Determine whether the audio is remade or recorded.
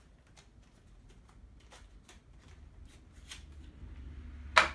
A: recorded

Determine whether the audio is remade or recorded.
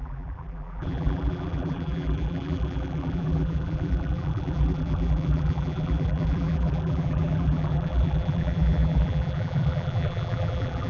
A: remade